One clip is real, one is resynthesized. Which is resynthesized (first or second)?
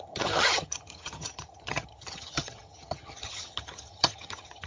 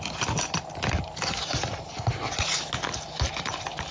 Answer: first